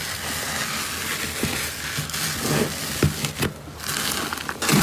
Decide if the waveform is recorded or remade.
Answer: recorded